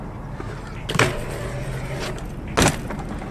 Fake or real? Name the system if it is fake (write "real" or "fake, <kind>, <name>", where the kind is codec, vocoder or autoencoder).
real